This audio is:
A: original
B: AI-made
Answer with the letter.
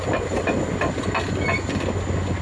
A